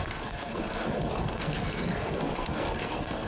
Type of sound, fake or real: fake